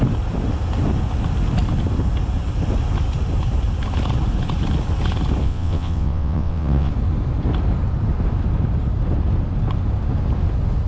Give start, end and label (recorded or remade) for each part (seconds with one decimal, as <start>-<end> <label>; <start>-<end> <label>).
0.0-5.4 recorded; 5.4-6.9 remade; 6.9-10.9 recorded